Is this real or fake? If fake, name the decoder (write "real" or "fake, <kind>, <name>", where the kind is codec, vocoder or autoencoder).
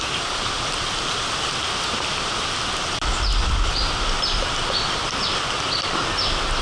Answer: real